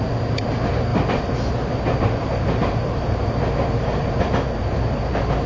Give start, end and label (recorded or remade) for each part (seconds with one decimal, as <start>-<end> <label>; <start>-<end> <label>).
0.0-2.2 recorded; 2.2-5.1 remade; 5.1-5.5 recorded